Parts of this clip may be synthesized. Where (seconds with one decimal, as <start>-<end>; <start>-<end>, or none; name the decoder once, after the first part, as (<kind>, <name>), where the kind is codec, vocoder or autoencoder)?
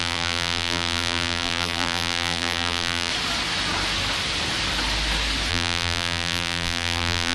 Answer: 0.0-3.1 (vocoder, BigVGAN v2); 5.5-7.3